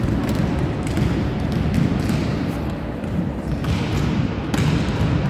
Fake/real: real